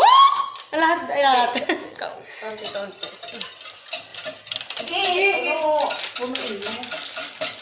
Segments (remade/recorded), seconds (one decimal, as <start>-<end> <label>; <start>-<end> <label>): 0.0-1.8 recorded; 1.8-2.5 remade; 2.5-7.6 recorded